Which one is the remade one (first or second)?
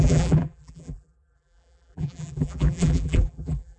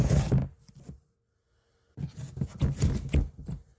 first